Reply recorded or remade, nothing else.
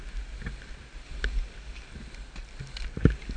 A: recorded